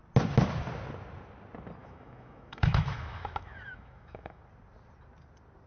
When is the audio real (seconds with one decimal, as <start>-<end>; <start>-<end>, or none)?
0.0-1.8; 4.4-5.7